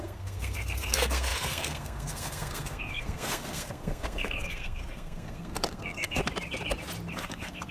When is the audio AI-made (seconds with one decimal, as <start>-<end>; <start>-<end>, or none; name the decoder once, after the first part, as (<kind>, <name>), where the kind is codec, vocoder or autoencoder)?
0.0-6.2 (codec, SNAC); 7.1-7.7